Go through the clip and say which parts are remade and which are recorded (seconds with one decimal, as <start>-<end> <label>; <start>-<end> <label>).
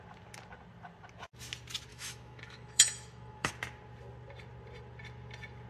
0.0-1.9 recorded; 1.9-3.5 remade; 3.5-5.7 recorded